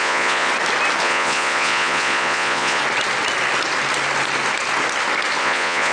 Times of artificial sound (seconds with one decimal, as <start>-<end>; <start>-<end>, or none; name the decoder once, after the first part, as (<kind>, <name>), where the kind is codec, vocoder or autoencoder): 0.0-0.5 (vocoder, Vocos); 1.0-2.8; 5.4-5.9